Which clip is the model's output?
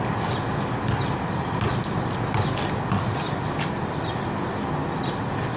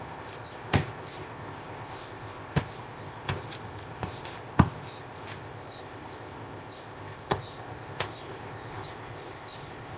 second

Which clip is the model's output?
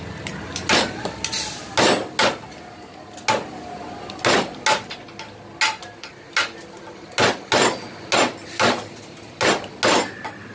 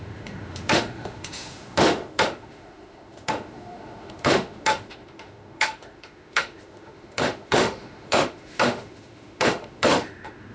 second